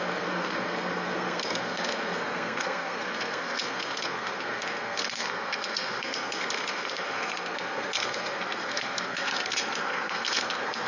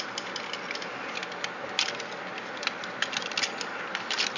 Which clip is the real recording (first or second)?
second